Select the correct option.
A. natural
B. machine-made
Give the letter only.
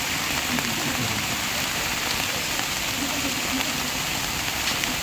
B